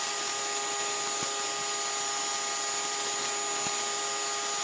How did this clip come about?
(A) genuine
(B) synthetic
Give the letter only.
A